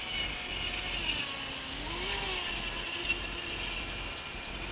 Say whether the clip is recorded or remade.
recorded